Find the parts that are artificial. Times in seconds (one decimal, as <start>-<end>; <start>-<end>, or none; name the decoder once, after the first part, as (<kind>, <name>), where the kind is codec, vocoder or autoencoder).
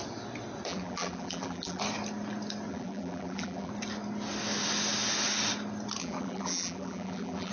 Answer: 0.7-1.8 (vocoder, BigVGAN v2); 2.7-3.7; 6.0-7.5